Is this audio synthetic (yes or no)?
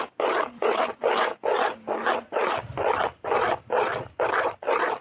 no